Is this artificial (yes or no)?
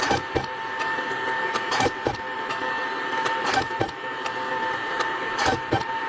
no